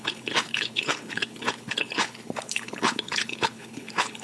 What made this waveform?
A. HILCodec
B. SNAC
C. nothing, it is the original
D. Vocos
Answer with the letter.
A